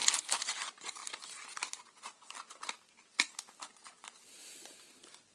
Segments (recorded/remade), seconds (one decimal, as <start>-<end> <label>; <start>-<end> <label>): 0.0-5.3 recorded